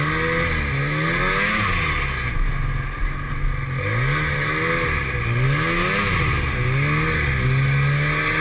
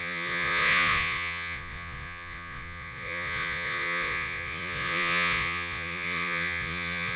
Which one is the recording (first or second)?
first